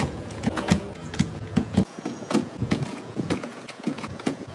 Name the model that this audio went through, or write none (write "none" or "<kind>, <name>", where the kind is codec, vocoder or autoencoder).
vocoder, Vocos